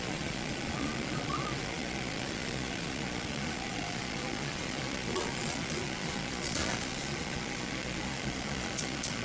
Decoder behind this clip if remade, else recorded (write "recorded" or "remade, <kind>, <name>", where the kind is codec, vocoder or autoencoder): remade, vocoder, Vocos